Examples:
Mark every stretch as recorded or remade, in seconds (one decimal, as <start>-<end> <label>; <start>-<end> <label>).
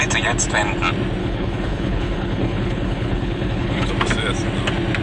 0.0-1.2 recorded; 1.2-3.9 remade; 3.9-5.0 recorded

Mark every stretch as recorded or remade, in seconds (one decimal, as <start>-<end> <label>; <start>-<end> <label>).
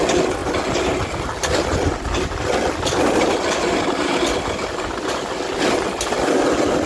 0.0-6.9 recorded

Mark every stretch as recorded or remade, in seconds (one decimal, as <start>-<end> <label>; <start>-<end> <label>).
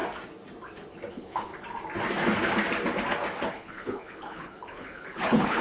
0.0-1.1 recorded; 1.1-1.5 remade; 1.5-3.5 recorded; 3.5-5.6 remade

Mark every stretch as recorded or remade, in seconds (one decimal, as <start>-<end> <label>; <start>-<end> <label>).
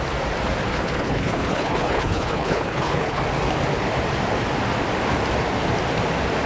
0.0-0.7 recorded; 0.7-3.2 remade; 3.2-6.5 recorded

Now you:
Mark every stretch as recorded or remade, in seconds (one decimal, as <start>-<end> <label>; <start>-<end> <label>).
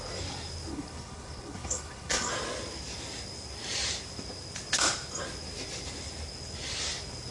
0.0-0.7 recorded; 0.7-2.3 remade; 2.3-7.3 recorded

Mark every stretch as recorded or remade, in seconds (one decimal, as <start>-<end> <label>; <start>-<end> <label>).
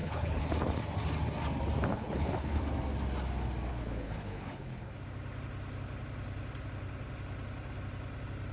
0.0-0.5 remade; 0.5-1.9 recorded; 1.9-2.6 remade; 2.6-3.7 recorded; 3.7-4.9 remade; 4.9-8.5 recorded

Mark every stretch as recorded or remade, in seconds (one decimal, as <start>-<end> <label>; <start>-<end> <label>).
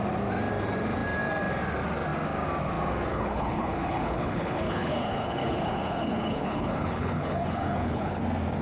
0.0-3.1 recorded; 3.1-8.2 remade; 8.2-8.6 recorded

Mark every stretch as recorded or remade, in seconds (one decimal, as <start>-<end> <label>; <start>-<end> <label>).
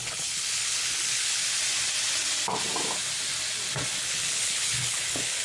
0.0-1.4 remade; 1.4-4.0 recorded; 4.0-5.4 remade